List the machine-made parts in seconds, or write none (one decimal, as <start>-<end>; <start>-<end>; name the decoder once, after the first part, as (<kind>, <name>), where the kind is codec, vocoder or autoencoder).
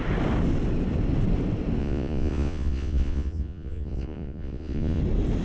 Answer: 1.8-5.0 (vocoder, Vocos)